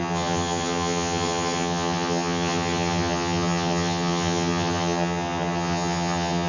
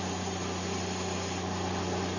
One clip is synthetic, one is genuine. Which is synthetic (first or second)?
first